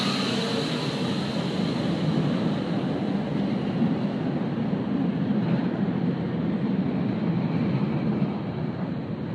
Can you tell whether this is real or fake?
real